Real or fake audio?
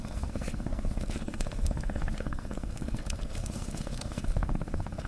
fake